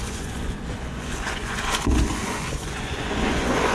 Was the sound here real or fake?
fake